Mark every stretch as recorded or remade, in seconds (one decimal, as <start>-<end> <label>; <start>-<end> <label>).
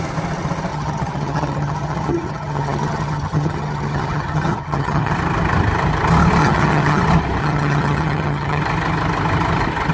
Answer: 0.0-0.7 recorded; 0.7-5.1 remade; 5.1-6.4 recorded; 6.4-7.0 remade; 7.0-7.4 recorded; 7.4-8.6 remade; 8.6-9.9 recorded